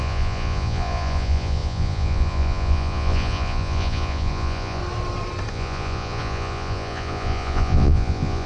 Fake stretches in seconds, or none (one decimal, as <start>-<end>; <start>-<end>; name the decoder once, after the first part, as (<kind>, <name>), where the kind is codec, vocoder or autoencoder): 0.0-4.8 (vocoder, Vocos); 5.5-8.5